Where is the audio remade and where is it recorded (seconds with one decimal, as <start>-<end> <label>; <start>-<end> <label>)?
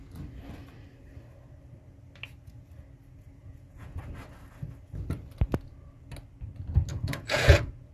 0.0-3.4 recorded; 3.4-4.0 remade; 4.0-6.9 recorded; 6.9-7.9 remade